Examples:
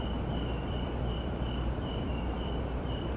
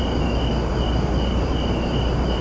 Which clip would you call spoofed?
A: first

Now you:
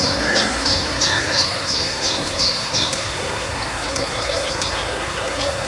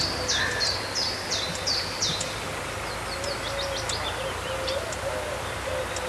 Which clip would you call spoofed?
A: first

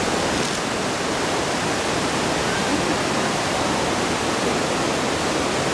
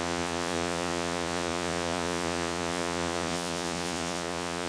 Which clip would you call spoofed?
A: second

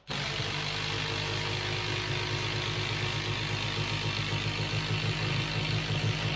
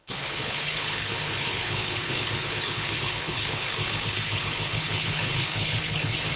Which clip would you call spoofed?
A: second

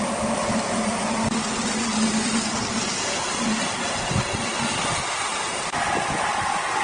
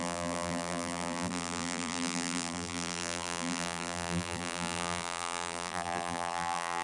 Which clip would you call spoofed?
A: second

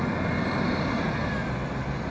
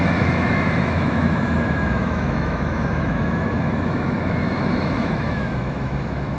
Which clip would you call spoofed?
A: second